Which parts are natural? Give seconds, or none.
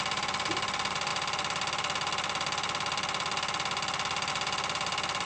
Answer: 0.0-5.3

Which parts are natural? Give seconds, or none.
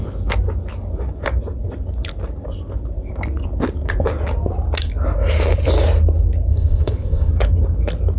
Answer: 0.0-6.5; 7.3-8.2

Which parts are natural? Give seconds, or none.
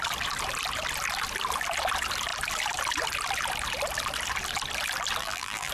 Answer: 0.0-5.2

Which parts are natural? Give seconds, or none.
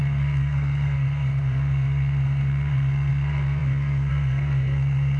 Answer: none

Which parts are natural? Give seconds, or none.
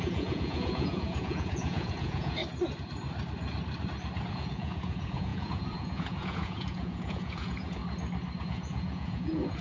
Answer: 2.4-4.3; 7.8-8.4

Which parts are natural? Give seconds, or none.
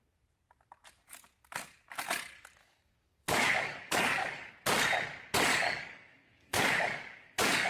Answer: 0.0-2.6; 4.5-5.5